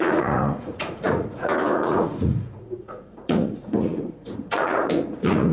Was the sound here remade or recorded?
remade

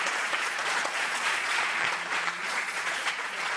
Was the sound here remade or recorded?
remade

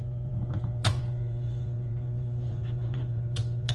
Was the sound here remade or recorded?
remade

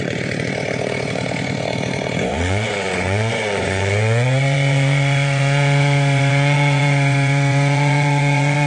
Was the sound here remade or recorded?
remade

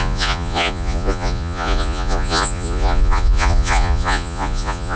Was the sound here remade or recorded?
remade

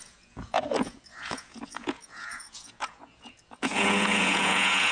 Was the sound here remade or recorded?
remade